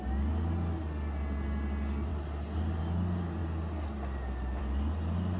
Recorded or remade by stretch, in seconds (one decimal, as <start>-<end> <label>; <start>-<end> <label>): 0.0-5.4 recorded